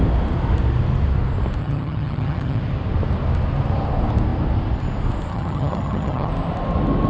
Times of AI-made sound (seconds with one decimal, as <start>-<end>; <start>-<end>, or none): 1.6-2.6; 5.3-6.3